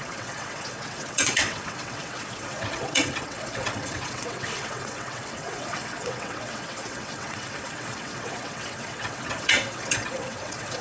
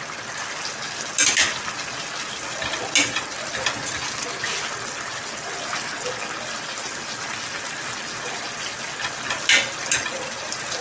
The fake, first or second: first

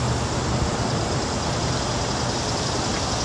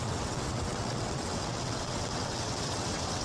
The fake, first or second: second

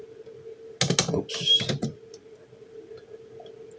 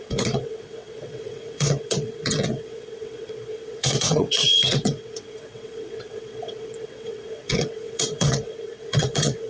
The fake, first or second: second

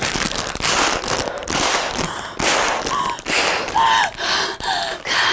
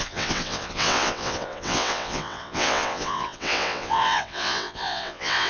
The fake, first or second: second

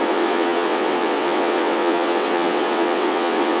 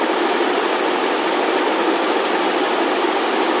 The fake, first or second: first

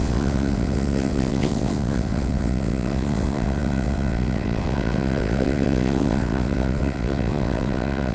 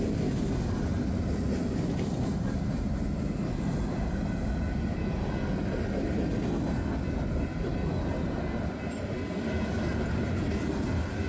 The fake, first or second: first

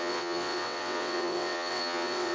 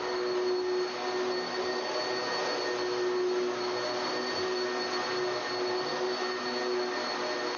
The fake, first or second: first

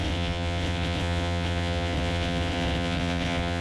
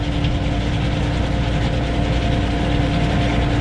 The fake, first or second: first